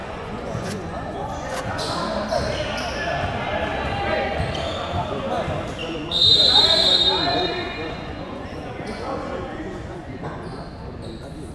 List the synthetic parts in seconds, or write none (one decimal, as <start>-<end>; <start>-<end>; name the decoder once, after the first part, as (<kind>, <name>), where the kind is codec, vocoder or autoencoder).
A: 0.0-2.0 (vocoder, Vocos); 5.8-10.6